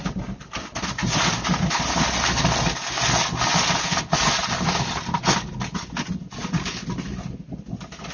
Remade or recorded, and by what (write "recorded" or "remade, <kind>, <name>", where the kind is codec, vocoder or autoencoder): recorded